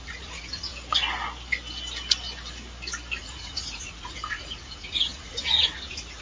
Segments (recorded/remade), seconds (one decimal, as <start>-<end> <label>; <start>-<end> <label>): 0.0-0.7 remade; 0.7-3.2 recorded; 3.2-6.2 remade